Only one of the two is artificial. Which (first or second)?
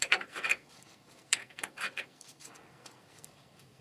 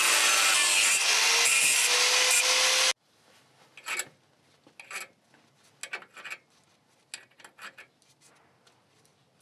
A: first